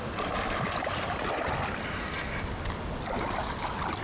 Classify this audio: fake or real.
real